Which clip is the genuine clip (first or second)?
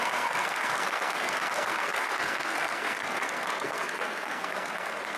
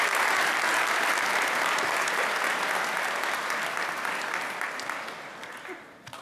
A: second